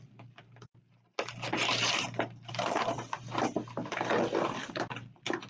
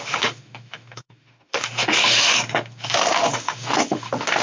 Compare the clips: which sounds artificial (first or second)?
second